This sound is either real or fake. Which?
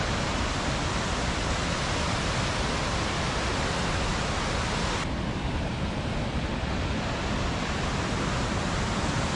real